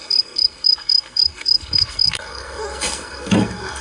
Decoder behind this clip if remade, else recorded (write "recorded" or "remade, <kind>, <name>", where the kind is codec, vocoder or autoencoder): remade, codec, SNAC